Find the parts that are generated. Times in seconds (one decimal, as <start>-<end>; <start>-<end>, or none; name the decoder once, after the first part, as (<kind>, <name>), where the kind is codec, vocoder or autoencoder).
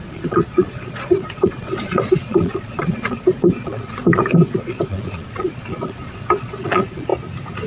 0.0-7.1 (vocoder, Vocos)